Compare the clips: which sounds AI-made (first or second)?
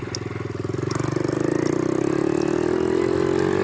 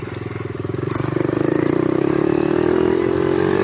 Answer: second